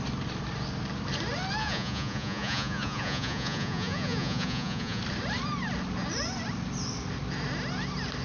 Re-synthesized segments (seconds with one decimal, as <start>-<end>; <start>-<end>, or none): 1.6-5.0